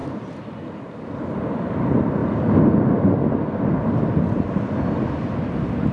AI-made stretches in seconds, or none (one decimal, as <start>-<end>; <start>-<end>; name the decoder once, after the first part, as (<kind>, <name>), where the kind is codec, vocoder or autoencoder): 0.9-2.2 (vocoder, BigVGAN v2); 4.1-5.9